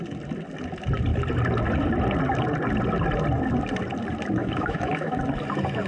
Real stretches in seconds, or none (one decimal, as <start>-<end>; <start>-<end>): 0.0-4.4; 5.2-5.9